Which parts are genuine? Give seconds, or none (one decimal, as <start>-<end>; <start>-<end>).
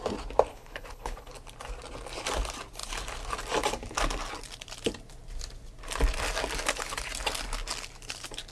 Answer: 0.0-0.5; 1.3-8.5